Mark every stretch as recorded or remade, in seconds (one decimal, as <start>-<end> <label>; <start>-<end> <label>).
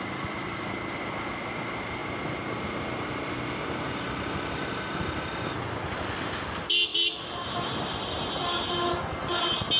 0.0-9.8 recorded